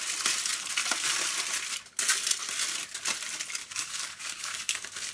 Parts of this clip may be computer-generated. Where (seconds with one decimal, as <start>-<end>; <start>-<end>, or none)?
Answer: 3.6-5.1